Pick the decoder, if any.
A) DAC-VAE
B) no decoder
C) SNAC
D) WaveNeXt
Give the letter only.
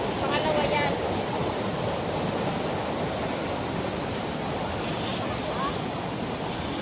B